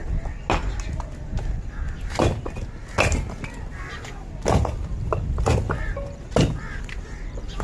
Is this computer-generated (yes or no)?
no